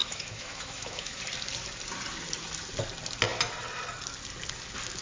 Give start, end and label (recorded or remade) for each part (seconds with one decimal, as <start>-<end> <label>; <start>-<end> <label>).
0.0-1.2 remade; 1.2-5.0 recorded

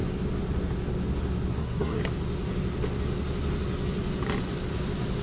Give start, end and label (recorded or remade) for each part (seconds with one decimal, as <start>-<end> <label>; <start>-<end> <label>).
0.0-1.5 recorded; 1.5-2.0 remade; 2.0-5.2 recorded

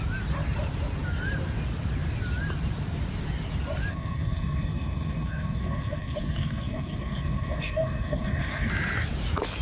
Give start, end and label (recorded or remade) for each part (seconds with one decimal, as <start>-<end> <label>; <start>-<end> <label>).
0.0-3.9 recorded; 3.9-8.7 remade; 8.7-9.6 recorded

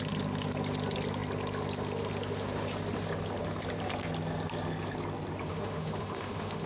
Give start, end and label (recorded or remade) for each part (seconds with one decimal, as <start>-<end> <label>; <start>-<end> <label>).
0.0-5.5 recorded; 5.5-6.7 remade

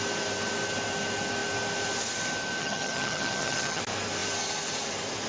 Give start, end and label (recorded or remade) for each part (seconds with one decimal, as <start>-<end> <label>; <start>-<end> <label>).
0.0-2.6 recorded; 2.6-3.8 remade; 3.8-5.3 recorded